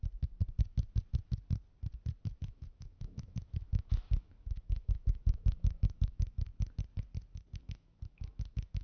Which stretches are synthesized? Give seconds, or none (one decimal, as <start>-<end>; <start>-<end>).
2.4-6.5; 7.6-8.8